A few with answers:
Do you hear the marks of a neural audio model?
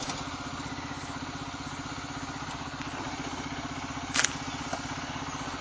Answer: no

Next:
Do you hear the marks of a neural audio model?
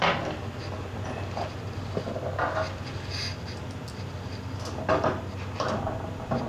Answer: no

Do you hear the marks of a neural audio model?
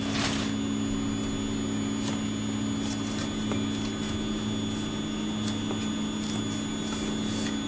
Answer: no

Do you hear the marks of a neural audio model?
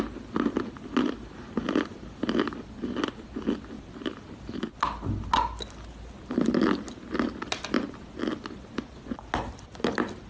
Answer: no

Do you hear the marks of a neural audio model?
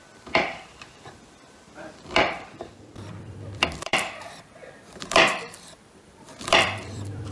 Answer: yes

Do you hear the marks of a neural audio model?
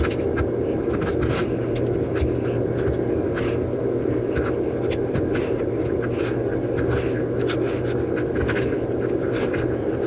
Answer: no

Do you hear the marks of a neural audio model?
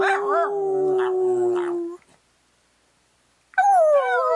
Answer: no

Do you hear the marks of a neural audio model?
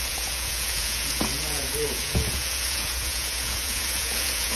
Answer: yes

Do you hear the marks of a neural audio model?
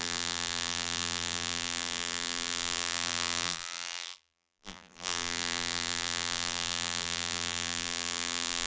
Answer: yes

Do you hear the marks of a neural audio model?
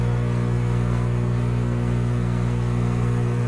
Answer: yes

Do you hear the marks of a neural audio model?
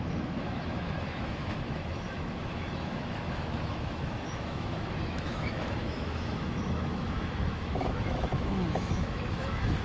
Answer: yes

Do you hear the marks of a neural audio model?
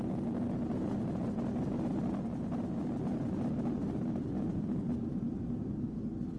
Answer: no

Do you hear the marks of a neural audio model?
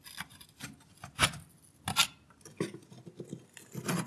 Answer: no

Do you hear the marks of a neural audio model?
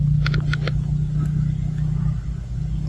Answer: no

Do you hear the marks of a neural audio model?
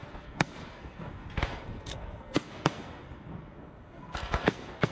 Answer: yes